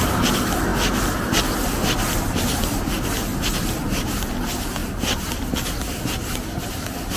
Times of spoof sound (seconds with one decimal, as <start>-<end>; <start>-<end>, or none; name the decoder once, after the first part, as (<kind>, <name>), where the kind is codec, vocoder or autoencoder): 4.8-5.4 (vocoder, BigVGAN v2)